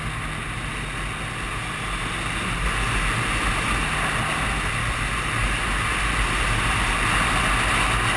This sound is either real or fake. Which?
real